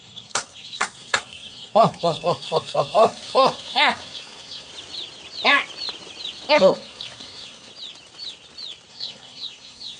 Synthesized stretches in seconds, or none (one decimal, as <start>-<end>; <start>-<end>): 0.0-4.7; 6.5-7.7; 8.9-10.0